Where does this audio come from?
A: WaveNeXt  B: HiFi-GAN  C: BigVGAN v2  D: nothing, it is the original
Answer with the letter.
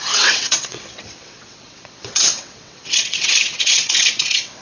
A